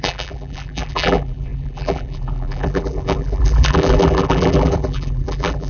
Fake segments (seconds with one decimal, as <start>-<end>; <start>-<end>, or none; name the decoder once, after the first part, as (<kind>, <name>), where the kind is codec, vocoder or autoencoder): 0.0-5.7 (vocoder, BigVGAN v2)

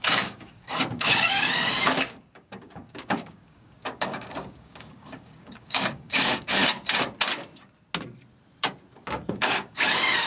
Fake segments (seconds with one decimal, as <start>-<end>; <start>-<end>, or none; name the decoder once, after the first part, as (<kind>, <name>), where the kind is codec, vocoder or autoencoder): 0.0-6.6 (codec, DAC); 9.3-10.3

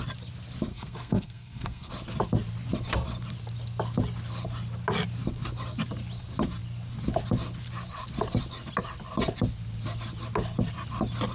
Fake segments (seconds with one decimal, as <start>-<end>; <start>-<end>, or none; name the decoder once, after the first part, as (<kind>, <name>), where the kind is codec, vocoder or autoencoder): 0.7-1.9 (codec, SNAC)

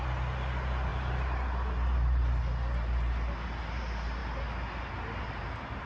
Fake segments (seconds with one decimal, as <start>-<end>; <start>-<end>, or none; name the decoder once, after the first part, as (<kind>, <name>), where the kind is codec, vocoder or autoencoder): none

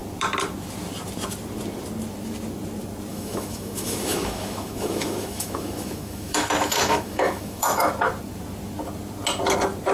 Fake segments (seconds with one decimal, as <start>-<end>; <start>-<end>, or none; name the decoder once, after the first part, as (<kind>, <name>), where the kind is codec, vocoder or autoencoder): 3.1-7.9 (autoencoder, DAC-VAE)